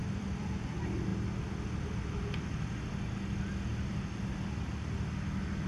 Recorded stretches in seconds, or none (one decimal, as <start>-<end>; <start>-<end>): 0.6-5.7